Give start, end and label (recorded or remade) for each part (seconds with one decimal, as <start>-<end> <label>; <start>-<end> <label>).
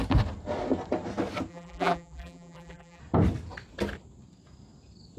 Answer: 0.0-1.5 recorded; 1.5-3.0 remade; 3.0-5.2 recorded